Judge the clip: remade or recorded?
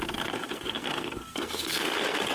remade